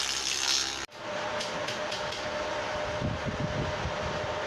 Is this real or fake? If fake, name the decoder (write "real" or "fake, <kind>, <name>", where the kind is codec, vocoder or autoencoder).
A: real